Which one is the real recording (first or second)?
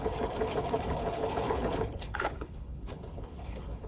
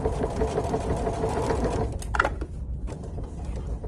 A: second